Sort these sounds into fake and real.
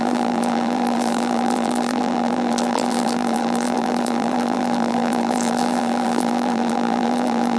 fake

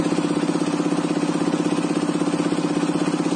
real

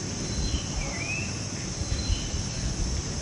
real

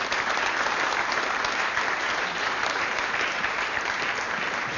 fake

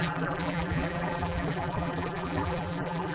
fake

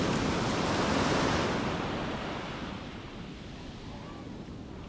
real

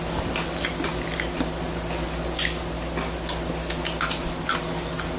real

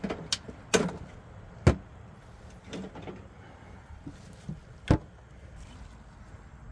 real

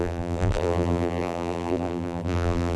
fake